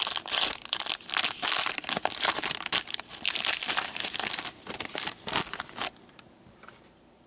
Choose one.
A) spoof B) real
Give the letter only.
B